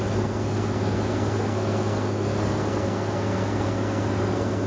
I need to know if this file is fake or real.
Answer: fake